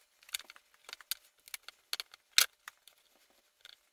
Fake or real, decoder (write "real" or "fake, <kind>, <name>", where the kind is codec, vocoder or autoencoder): real